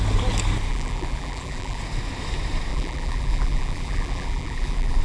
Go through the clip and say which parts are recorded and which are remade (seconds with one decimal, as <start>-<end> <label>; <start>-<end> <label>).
0.0-0.7 recorded; 0.7-1.8 remade; 1.8-2.7 recorded; 2.7-5.0 remade